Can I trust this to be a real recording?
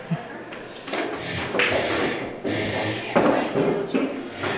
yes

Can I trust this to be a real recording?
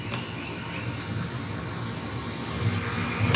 yes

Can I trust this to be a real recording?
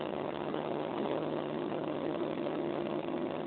no